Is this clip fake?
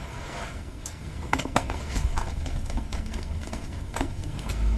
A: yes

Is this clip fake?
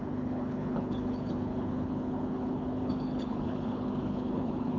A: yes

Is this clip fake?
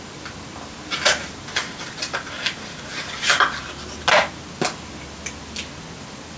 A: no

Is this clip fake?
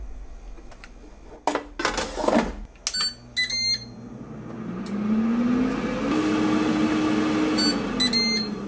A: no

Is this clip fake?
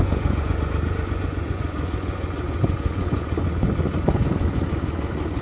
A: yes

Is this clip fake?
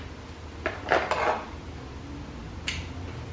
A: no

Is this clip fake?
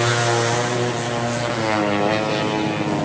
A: no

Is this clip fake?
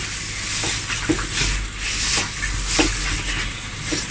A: no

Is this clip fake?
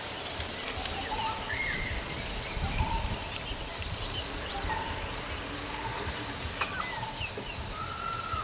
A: no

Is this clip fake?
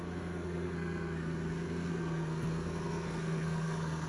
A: yes